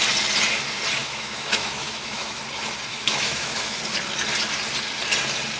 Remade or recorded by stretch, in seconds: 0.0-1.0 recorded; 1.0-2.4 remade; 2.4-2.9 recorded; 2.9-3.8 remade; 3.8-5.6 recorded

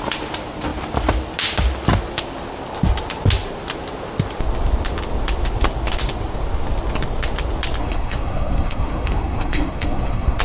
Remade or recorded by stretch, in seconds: 0.0-7.8 recorded; 7.8-10.4 remade